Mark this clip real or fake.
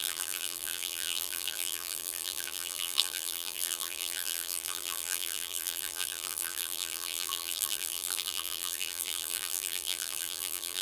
fake